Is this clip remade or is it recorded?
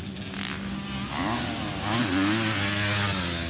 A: recorded